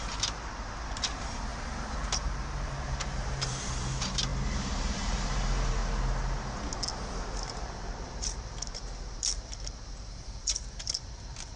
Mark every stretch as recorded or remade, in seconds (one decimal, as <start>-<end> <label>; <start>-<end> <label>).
0.0-5.8 remade; 5.8-7.4 recorded; 7.4-11.6 remade